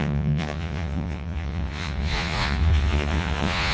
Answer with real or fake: fake